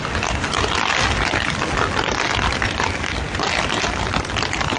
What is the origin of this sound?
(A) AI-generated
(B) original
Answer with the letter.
B